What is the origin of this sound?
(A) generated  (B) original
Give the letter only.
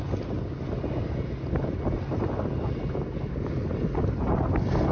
B